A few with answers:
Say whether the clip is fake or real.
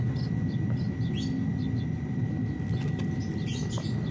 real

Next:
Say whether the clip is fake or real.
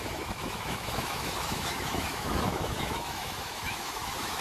fake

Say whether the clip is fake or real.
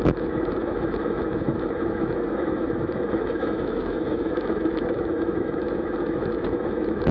fake